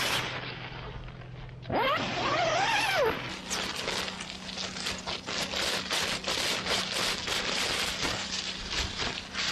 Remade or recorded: recorded